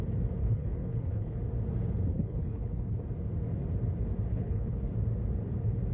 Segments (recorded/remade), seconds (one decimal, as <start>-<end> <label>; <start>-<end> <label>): 0.0-0.4 recorded; 0.4-1.4 remade; 1.4-2.1 recorded; 2.1-3.0 remade; 3.0-4.3 recorded; 4.3-4.8 remade; 4.8-5.9 recorded